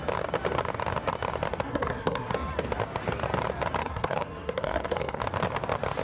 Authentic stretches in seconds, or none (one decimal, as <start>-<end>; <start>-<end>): 0.0-1.7; 2.3-3.8; 5.2-6.0